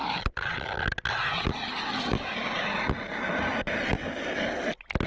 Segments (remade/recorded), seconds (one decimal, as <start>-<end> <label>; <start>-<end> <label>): 0.0-5.1 recorded